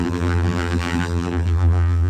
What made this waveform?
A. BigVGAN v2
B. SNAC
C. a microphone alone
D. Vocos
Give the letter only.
A